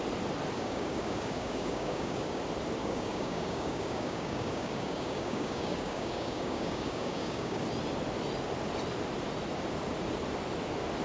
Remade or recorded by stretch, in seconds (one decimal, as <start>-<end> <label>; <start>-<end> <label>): 0.0-0.6 recorded; 0.6-2.4 remade; 2.4-2.8 recorded; 2.8-7.6 remade; 7.6-11.0 recorded